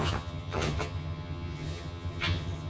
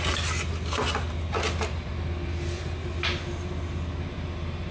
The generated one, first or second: first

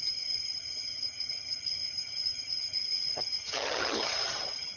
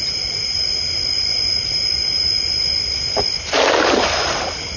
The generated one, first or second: first